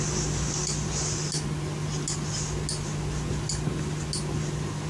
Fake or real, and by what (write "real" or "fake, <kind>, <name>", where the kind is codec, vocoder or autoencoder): real